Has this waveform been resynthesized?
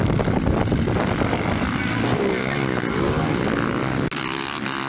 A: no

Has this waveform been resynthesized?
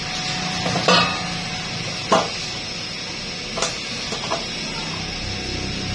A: no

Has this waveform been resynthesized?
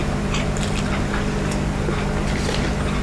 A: no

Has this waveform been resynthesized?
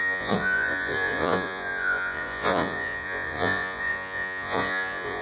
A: yes